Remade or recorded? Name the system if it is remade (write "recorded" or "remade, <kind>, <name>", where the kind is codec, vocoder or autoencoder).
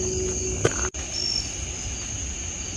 recorded